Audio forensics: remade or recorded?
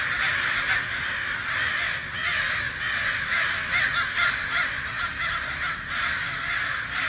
recorded